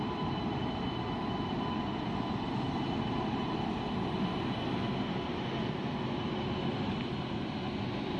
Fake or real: real